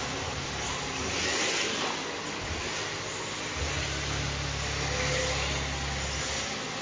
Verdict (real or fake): real